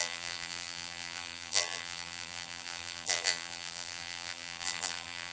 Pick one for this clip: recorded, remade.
remade